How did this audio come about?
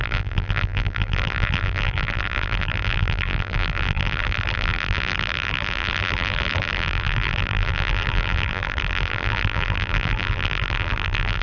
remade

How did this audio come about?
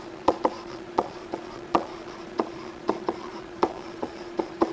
remade